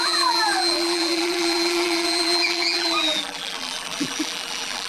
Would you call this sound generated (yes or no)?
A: yes